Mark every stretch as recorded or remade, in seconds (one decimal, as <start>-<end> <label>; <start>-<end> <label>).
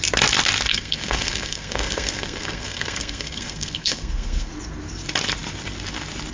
0.0-0.7 recorded; 0.7-4.5 remade; 4.5-6.3 recorded